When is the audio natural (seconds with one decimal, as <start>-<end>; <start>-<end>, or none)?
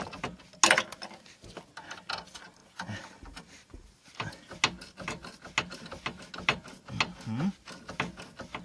0.0-2.6; 4.3-8.6